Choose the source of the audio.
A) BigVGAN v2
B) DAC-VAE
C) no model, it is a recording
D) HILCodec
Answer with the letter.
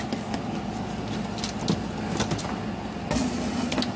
C